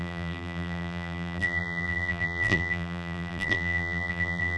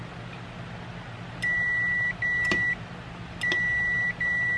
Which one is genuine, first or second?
second